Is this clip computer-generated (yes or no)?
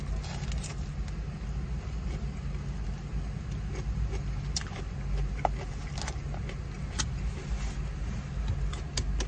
no